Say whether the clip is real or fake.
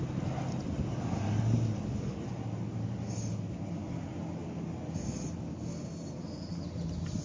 real